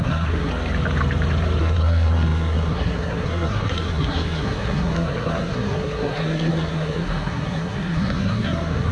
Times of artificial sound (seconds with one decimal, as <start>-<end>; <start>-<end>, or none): 0.0-0.5; 1.6-8.9